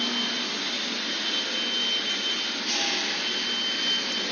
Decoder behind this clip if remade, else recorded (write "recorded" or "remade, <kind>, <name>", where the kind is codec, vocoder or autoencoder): recorded